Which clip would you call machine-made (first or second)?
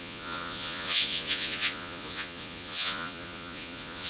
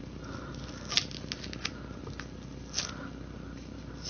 first